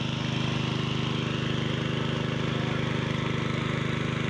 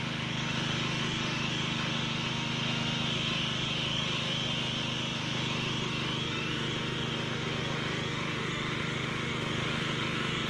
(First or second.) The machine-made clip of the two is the second